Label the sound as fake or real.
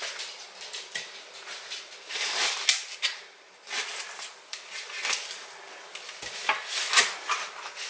real